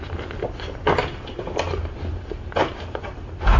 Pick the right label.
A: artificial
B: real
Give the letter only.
B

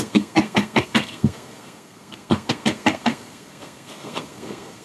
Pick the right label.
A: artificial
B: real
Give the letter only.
A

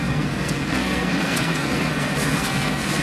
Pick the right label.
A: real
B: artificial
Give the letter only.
B